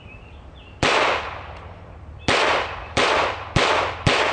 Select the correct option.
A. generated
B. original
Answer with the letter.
B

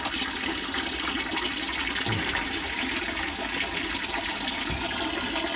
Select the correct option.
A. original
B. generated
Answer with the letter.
A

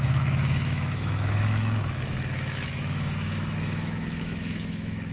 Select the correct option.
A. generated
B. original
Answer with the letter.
A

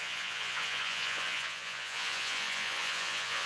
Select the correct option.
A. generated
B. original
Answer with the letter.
A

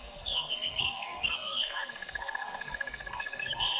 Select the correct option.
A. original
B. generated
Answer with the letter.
B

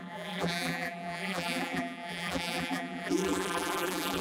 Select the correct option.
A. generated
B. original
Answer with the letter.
A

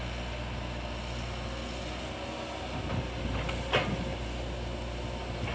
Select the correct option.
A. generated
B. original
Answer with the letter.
B